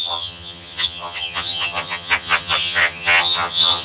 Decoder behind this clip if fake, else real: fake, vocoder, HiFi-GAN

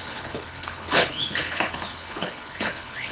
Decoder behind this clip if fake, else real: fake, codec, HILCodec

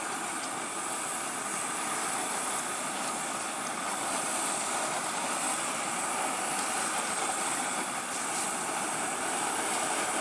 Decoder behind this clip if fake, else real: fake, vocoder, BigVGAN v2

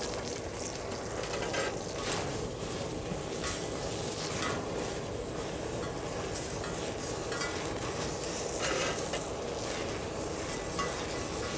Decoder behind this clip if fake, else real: real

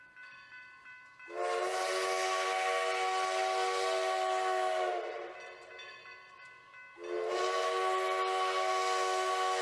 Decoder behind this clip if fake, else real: real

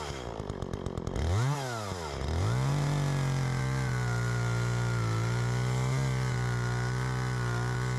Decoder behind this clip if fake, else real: real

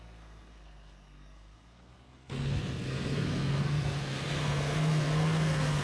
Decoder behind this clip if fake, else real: fake, codec, SNAC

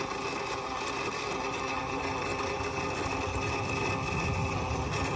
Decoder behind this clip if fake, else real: real